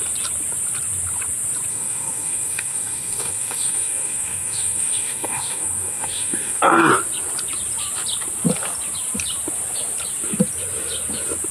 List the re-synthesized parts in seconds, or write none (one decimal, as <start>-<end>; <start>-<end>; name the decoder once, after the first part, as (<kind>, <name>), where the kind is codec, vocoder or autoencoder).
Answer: 1.7-6.6 (codec, DAC)

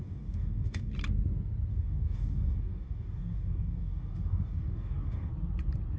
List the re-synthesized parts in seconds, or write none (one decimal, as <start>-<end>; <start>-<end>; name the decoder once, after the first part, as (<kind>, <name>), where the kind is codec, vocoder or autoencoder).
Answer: 0.0-0.9 (codec, DAC); 1.7-5.3

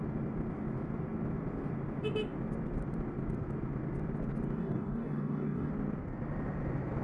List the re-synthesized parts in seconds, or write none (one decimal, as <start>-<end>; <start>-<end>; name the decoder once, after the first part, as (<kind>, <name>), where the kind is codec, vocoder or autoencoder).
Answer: 4.6-5.7 (codec, DAC)

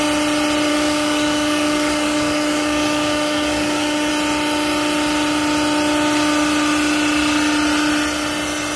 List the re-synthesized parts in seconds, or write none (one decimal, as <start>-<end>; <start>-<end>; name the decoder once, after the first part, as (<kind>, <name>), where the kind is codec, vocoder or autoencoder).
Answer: 0.7-4.1 (codec, DAC)

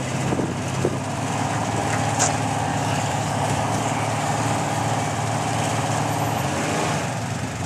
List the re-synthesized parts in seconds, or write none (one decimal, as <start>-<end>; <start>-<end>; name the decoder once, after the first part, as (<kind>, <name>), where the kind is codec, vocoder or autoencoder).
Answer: 2.7-4.8 (codec, DAC)